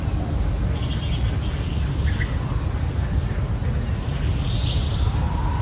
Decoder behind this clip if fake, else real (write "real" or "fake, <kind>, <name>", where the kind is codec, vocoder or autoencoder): real